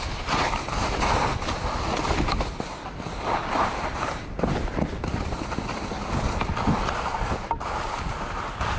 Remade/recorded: recorded